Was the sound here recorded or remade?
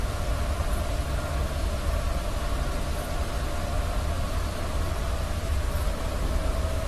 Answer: recorded